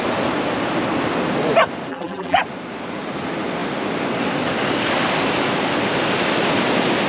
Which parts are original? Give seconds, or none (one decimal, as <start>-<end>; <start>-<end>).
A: 0.0-1.9; 2.4-7.1

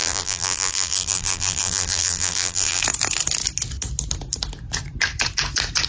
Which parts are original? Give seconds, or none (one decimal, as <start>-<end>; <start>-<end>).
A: 2.8-5.9